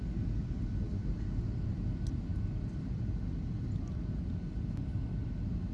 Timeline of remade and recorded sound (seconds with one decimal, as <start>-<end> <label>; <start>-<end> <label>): 0.0-5.7 recorded